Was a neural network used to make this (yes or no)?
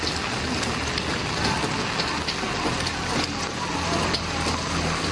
no